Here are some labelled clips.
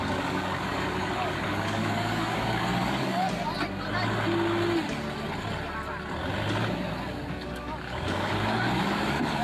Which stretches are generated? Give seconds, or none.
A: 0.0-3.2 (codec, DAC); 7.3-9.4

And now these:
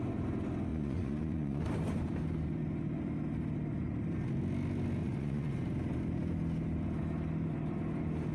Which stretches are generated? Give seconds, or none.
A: 0.7-1.6 (vocoder, Vocos); 5.0-5.5

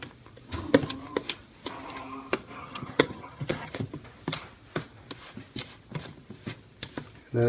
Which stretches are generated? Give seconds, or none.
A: 2.6-3.7 (vocoder, HiFi-GAN)

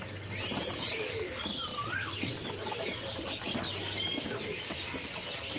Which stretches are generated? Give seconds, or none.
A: 1.7-2.3 (vocoder, BigVGAN v2)

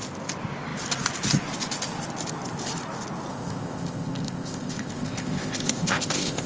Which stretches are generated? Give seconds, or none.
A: 3.3-6.5 (codec, ZipCodec)

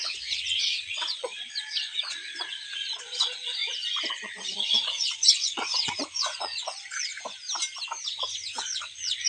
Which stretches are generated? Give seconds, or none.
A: 0.0-3.6 (vocoder, Vocos); 4.1-7.1; 8.6-9.3

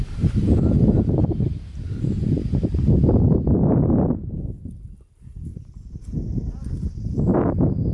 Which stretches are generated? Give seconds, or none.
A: 5.5-6.4 (vocoder, BigVGAN v2)